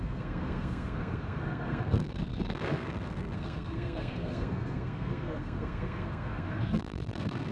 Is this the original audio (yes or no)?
no